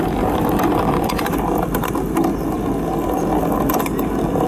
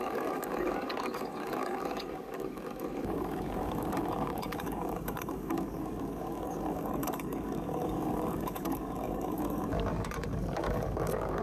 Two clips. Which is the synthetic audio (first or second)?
second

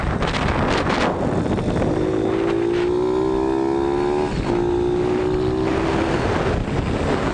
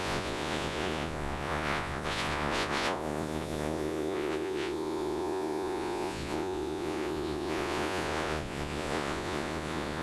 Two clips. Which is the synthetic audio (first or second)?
second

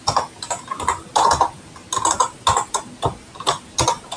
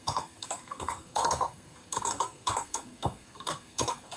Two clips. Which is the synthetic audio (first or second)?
second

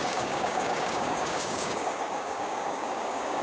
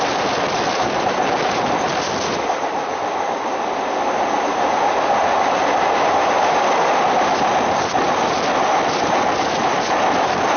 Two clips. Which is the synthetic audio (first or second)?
first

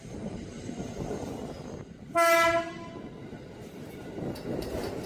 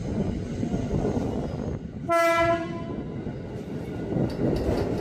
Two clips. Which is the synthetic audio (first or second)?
first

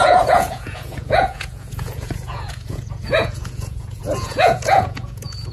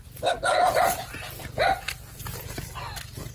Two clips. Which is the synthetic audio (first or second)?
first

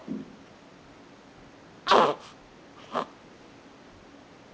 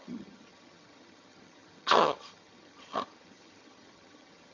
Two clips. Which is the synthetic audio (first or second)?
second